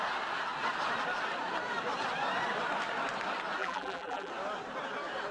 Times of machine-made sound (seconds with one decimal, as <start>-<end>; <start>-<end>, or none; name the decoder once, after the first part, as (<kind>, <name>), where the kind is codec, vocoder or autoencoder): 3.6-4.3 (vocoder, BigVGAN v2)